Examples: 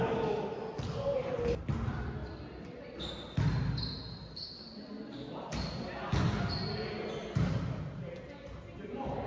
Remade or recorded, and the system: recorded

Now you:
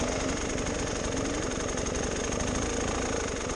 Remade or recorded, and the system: recorded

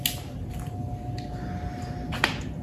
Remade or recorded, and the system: recorded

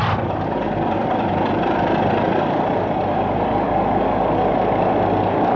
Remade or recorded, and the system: remade, vocoder, BigVGAN v2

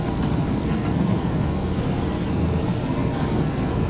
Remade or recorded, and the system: remade, codec, SNAC